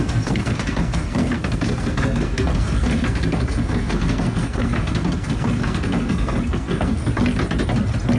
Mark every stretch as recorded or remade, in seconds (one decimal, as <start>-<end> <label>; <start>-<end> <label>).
0.0-7.0 remade; 7.0-8.2 recorded